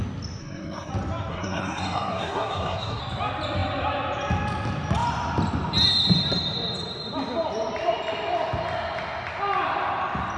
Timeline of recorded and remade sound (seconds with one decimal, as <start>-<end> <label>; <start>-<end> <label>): 0.0-0.4 recorded; 0.4-0.9 remade; 0.9-1.3 recorded; 1.3-3.0 remade; 3.0-10.4 recorded